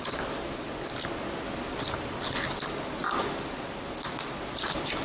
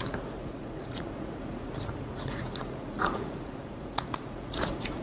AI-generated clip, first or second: second